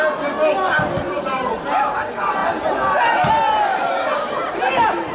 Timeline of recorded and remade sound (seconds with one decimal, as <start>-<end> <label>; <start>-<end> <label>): 0.0-1.0 recorded; 1.0-1.5 remade; 1.5-3.7 recorded; 3.7-4.4 remade; 4.4-5.1 recorded